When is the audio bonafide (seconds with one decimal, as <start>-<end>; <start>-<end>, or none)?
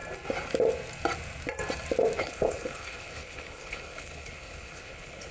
0.0-2.2